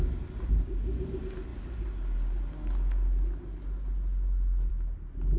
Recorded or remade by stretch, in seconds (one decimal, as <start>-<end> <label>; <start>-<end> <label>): 0.0-5.4 recorded